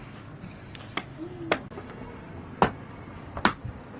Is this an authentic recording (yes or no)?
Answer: yes